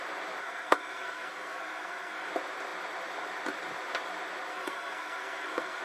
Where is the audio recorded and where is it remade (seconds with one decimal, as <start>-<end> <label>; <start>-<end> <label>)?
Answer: 0.0-0.4 recorded; 0.4-2.3 remade; 2.3-4.5 recorded; 4.5-5.8 remade

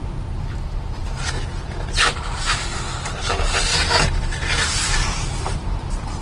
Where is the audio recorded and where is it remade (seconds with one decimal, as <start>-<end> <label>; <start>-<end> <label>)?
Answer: 0.0-6.2 recorded

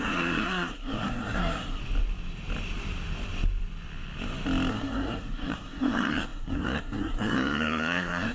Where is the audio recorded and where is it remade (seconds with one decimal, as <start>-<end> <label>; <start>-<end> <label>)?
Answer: 0.0-1.8 remade; 1.8-4.7 recorded; 4.7-8.3 remade